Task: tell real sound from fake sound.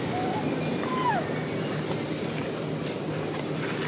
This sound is real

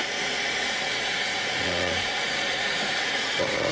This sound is fake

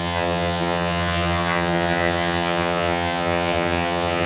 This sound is fake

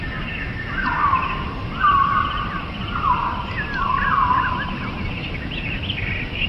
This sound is real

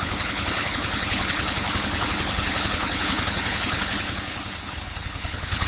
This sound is fake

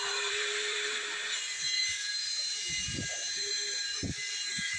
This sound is fake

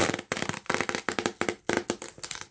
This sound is real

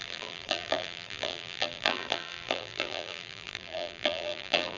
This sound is fake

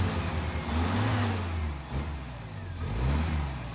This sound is real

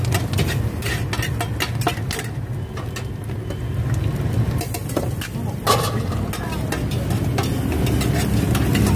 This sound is real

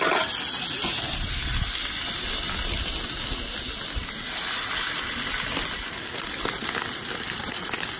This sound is real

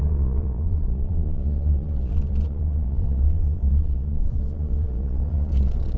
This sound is fake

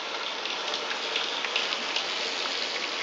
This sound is real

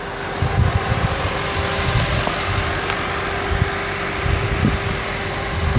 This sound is real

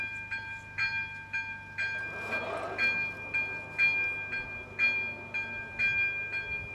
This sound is real